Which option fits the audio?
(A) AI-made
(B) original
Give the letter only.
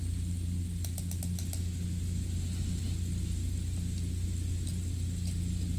B